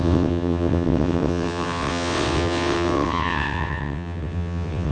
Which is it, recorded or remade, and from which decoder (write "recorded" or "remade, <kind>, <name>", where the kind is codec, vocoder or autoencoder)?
remade, vocoder, WaveNeXt